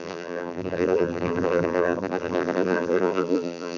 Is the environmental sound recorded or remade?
remade